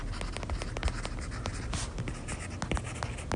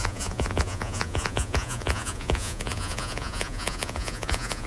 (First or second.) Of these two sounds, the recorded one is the first